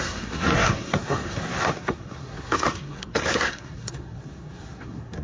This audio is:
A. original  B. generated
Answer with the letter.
B